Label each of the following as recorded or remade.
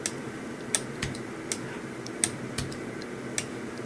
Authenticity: recorded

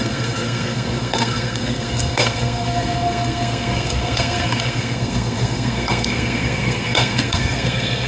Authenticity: remade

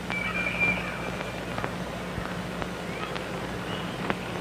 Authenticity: recorded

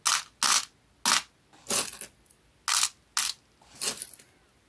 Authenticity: recorded